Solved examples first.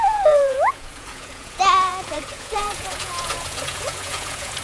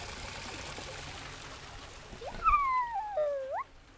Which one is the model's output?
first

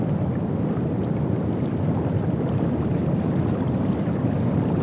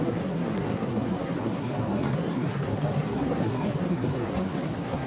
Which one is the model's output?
second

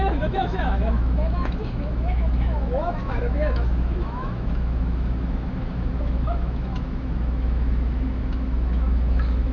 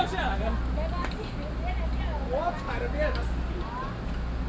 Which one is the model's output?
first